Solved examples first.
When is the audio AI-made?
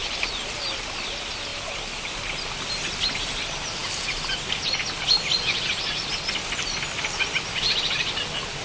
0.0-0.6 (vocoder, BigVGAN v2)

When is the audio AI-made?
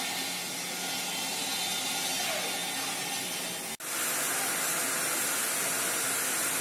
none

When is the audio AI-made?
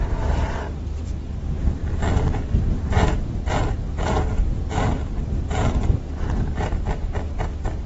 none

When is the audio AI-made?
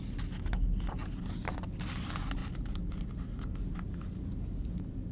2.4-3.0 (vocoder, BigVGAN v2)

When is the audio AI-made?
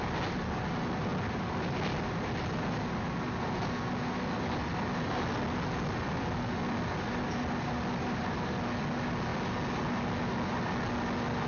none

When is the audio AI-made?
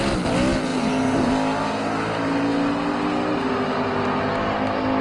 0.7-1.3 (vocoder, BigVGAN v2)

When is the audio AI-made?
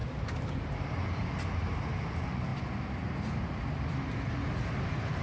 0.0-2.5 (vocoder, BigVGAN v2); 3.9-5.2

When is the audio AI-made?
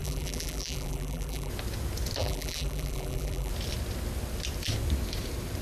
0.0-1.5 (vocoder, BigVGAN v2); 2.2-3.5